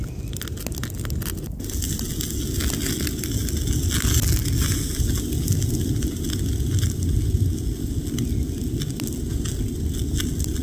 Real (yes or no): yes